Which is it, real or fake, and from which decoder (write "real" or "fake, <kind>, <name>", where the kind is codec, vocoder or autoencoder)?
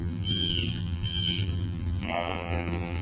fake, vocoder, BigVGAN v2